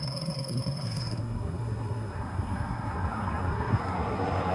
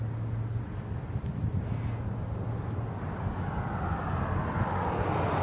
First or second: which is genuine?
second